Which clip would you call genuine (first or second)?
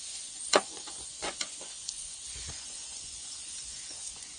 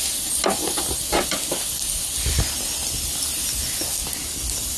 second